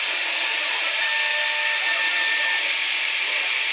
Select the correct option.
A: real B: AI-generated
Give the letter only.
A